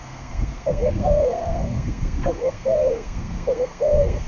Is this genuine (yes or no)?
no